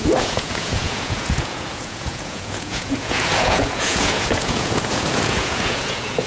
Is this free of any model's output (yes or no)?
no